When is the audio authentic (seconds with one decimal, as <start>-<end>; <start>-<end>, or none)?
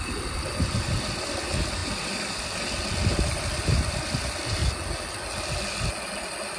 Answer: 4.6-6.6